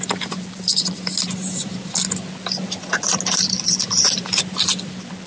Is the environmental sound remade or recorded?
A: recorded